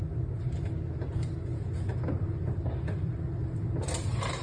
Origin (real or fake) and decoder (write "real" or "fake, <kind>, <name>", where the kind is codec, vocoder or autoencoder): real